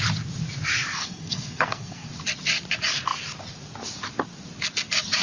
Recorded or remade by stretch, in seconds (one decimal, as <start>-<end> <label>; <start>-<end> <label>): 0.0-0.9 recorded; 0.9-2.1 remade; 2.1-5.2 recorded